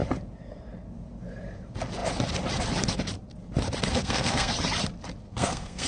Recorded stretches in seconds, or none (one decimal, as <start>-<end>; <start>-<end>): 0.0-3.9; 4.5-5.3